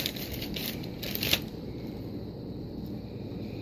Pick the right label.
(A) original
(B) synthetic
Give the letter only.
A